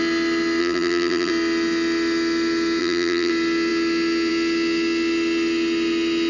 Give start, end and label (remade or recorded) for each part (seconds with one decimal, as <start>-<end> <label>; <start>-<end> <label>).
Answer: 0.0-0.6 recorded; 0.6-1.3 remade; 1.3-2.8 recorded; 2.8-3.3 remade; 3.3-6.3 recorded